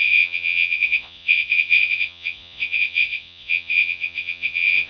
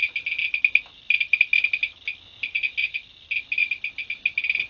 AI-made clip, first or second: first